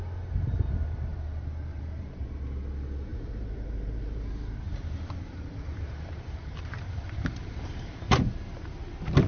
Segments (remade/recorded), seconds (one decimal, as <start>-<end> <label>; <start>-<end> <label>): 0.0-1.1 recorded; 1.1-2.1 remade; 2.1-3.1 recorded; 3.1-8.2 remade; 8.2-9.3 recorded